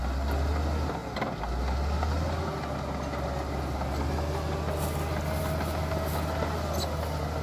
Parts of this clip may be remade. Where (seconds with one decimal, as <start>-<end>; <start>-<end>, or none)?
none